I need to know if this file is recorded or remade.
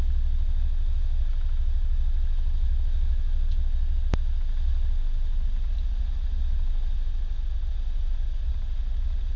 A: recorded